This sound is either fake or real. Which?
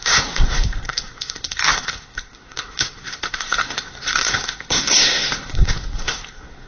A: fake